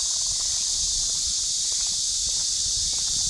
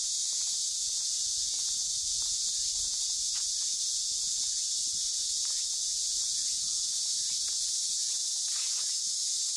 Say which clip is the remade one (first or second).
second